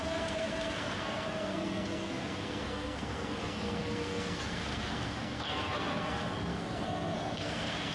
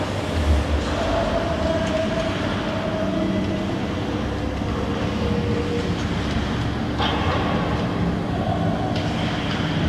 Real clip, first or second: second